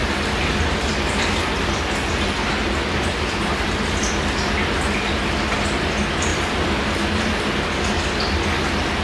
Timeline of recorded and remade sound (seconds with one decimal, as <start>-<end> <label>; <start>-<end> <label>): 0.0-1.3 remade; 1.3-6.3 recorded; 6.3-7.4 remade; 7.4-9.0 recorded